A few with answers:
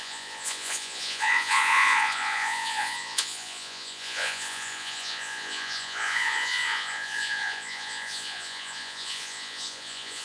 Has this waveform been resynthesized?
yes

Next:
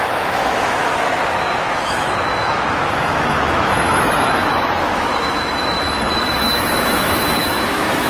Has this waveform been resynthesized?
yes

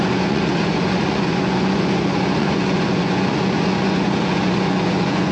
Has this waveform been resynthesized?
yes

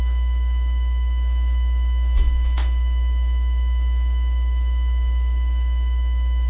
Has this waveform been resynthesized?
yes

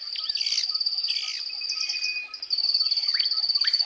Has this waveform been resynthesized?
no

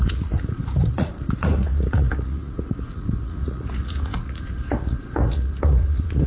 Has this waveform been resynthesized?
yes